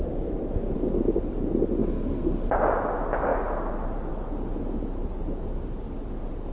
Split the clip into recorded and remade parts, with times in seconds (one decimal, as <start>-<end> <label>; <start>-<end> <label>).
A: 0.0-1.8 recorded; 1.8-2.5 remade; 2.5-6.5 recorded